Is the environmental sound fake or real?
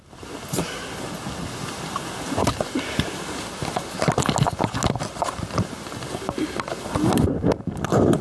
real